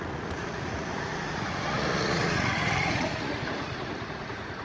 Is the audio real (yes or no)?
no